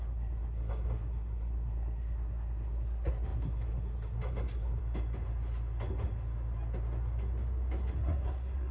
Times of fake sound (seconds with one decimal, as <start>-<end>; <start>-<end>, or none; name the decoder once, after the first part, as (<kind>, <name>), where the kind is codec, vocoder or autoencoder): 0.0-4.8 (codec, SNAC); 7.9-8.7